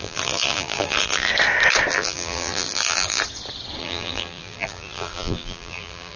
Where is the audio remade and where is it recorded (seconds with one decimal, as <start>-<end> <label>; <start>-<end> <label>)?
0.0-1.3 remade; 1.3-1.9 recorded; 1.9-3.2 remade; 3.2-3.8 recorded; 3.8-6.2 remade

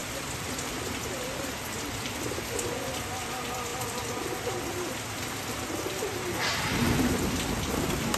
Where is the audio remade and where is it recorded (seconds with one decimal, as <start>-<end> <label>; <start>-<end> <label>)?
0.0-2.6 remade; 2.6-8.2 recorded

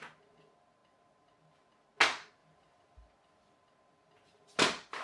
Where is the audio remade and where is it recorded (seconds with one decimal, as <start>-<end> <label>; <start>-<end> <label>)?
0.0-5.0 recorded

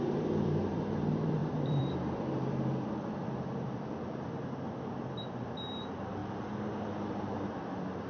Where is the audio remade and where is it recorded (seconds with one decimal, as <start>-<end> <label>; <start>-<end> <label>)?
0.0-6.2 remade; 6.2-7.1 recorded; 7.1-8.1 remade

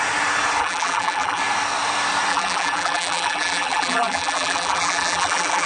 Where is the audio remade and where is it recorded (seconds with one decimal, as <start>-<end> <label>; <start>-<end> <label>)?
0.0-0.6 recorded; 0.6-1.4 remade; 1.4-2.3 recorded; 2.3-5.7 remade